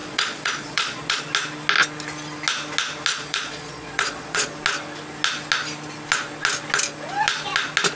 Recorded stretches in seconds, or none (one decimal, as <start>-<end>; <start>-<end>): 1.2-3.1; 4.5-8.0